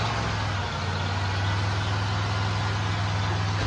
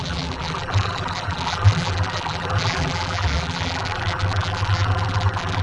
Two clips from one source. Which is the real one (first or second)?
first